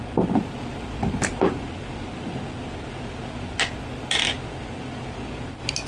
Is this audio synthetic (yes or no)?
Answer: no